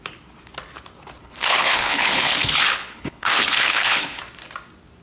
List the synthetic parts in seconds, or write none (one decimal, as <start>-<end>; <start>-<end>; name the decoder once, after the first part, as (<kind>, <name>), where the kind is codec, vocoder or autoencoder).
1.2-4.2 (codec, HILCodec)